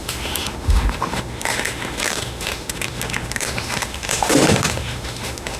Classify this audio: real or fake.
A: fake